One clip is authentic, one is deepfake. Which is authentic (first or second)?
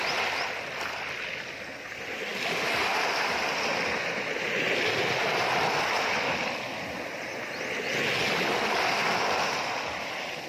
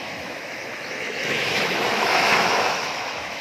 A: first